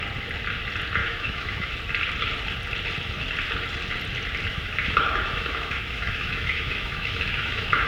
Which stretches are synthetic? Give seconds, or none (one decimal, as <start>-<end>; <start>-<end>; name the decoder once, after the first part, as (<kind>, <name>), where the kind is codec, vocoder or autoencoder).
1.0-1.7 (autoencoder, DAC-VAE); 4.5-7.9